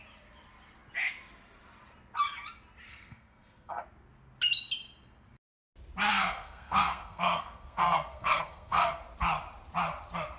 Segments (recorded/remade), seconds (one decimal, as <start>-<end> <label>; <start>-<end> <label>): 0.0-2.9 recorded; 2.9-3.8 remade; 3.8-6.1 recorded; 6.1-9.0 remade; 9.0-10.4 recorded

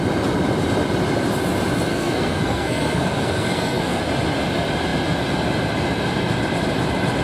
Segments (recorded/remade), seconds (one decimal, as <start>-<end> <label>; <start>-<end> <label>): 0.0-1.9 recorded; 1.9-4.0 remade; 4.0-7.2 recorded

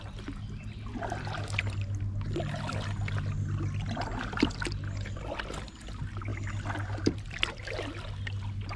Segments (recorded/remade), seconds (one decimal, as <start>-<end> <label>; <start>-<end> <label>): 0.0-8.8 recorded

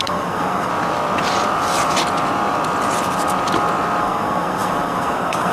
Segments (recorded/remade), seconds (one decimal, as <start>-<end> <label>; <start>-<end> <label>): 0.0-0.7 remade; 0.7-4.0 recorded; 4.0-5.5 remade